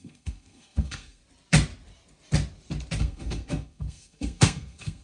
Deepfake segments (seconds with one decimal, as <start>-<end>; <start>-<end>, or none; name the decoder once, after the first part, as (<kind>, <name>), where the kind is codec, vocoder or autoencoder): 0.0-1.2 (codec, SNAC); 3.0-5.0